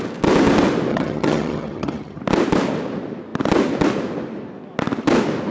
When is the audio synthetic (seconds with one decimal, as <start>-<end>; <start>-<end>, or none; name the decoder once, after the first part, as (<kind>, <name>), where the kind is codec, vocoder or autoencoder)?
0.9-2.2 (vocoder, HiFi-GAN)